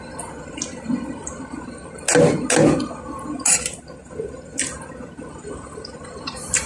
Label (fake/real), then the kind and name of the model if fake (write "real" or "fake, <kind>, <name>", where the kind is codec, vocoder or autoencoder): real